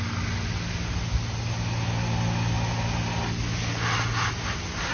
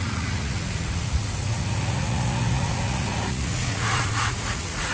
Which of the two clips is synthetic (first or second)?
second